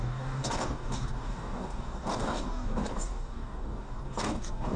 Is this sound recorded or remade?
remade